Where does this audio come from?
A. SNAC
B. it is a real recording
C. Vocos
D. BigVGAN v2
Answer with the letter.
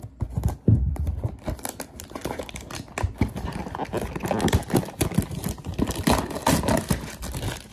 B